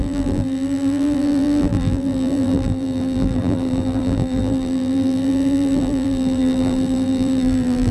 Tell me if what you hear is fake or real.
fake